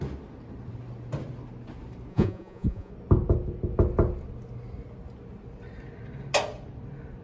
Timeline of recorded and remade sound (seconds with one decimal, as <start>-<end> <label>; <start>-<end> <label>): 0.0-2.1 recorded; 2.1-2.9 remade; 2.9-7.2 recorded